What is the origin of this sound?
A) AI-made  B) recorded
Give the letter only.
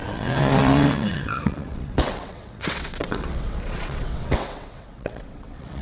A